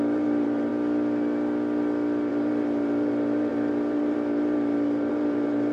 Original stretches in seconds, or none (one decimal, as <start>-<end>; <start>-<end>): 0.7-2.3